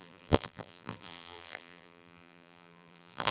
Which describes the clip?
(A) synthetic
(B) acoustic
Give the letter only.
A